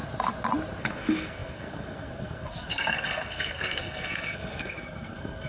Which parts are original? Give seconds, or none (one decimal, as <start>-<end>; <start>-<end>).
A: 0.0-0.8